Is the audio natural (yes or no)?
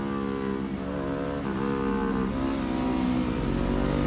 yes